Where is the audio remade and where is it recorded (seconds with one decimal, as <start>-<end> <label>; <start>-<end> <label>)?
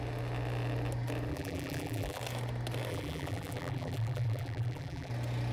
0.0-1.3 recorded; 1.3-2.2 remade; 2.2-2.9 recorded; 2.9-5.1 remade; 5.1-5.5 recorded